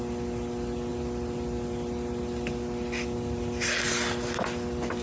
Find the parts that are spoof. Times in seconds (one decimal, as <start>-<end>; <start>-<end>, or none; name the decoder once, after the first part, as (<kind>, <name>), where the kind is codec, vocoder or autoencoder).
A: none